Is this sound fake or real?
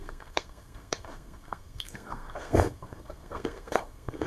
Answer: fake